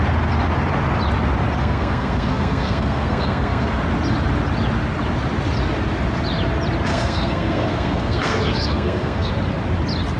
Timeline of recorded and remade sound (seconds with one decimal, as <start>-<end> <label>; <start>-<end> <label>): 0.0-1.6 recorded; 1.6-3.8 remade; 3.8-6.9 recorded; 6.9-9.3 remade; 9.3-10.2 recorded